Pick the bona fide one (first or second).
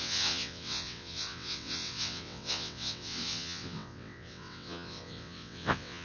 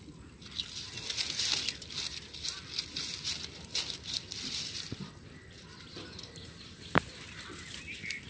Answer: second